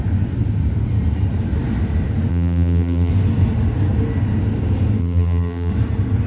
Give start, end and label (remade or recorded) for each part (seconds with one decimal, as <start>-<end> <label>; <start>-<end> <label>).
0.0-2.3 recorded; 2.3-3.1 remade; 3.1-5.0 recorded; 5.0-5.7 remade; 5.7-6.3 recorded